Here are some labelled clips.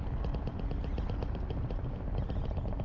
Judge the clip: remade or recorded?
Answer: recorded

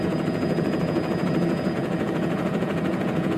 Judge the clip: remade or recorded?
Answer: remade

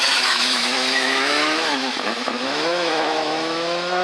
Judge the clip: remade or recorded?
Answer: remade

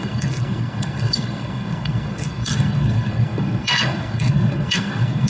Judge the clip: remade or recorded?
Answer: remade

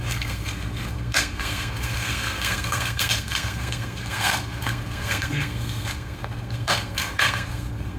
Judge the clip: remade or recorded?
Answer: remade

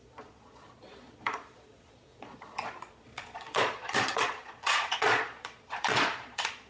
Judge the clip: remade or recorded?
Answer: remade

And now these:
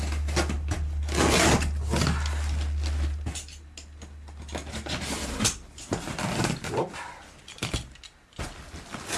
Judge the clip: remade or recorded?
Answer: recorded